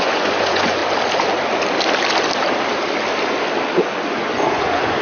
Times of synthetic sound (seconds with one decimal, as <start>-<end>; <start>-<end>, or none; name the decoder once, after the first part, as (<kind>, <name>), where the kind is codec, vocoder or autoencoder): 0.0-0.8 (vocoder, Vocos); 3.8-5.0